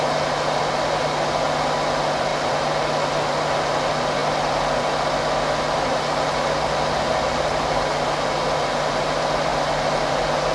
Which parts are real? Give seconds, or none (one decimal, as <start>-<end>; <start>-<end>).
0.0-10.5